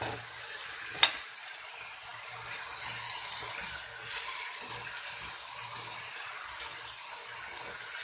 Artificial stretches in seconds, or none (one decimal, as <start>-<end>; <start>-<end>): none